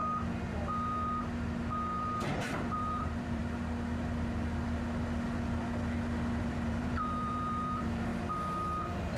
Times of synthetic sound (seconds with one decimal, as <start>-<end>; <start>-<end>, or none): 2.0-3.4; 6.4-8.1